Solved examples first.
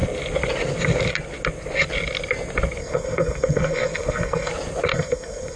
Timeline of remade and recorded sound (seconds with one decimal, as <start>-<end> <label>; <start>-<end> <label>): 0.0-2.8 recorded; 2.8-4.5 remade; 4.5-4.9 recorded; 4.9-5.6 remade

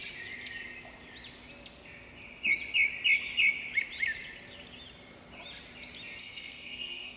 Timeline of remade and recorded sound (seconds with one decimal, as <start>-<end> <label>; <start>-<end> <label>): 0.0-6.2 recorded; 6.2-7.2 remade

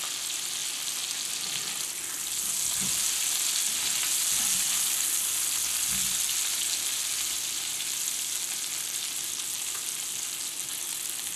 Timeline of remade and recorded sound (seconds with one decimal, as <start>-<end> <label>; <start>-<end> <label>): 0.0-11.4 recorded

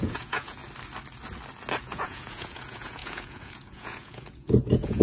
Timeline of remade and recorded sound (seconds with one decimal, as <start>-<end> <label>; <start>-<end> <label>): 0.0-0.6 remade; 0.6-1.8 recorded; 1.8-5.0 remade

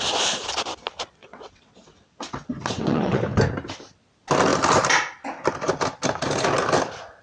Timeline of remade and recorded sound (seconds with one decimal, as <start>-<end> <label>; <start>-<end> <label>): 0.0-1.2 recorded; 1.2-3.2 remade; 3.2-7.2 recorded

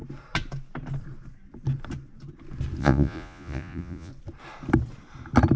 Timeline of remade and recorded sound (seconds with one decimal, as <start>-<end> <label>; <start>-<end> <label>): 0.0-2.8 recorded; 2.8-4.1 remade; 4.1-5.6 recorded